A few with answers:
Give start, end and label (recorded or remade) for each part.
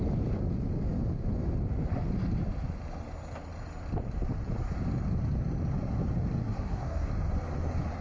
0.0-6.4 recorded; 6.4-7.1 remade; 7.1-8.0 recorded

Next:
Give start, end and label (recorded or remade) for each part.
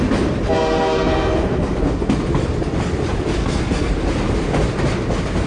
0.0-1.1 recorded; 1.1-1.8 remade; 1.8-3.4 recorded; 3.4-3.9 remade; 3.9-5.5 recorded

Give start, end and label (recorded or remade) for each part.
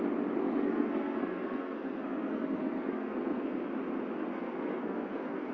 0.0-0.4 recorded; 0.4-3.7 remade; 3.7-4.3 recorded; 4.3-5.5 remade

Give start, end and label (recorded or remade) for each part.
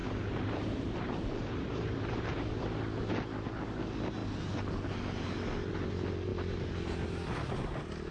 0.0-2.6 remade; 2.6-8.1 recorded